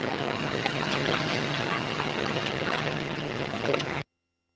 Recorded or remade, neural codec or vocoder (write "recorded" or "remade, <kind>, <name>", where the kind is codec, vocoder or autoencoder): remade, vocoder, HiFi-GAN